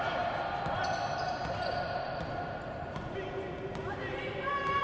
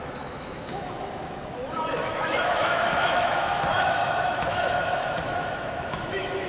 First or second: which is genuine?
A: first